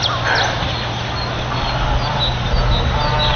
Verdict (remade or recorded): recorded